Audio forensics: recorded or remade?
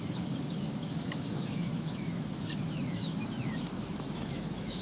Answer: remade